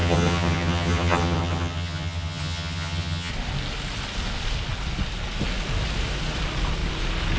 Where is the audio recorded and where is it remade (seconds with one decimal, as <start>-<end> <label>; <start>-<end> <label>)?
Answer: 0.0-3.3 remade; 3.3-7.4 recorded